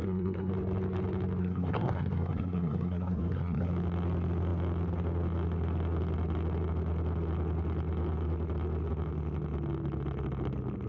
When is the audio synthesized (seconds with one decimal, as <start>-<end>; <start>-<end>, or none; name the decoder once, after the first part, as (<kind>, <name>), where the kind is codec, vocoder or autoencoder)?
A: 0.0-0.5 (codec, SNAC); 1.4-3.7